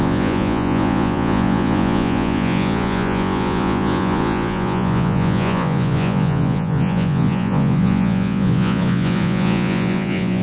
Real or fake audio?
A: fake